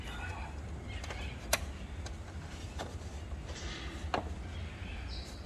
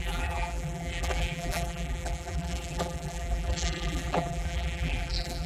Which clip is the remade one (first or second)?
second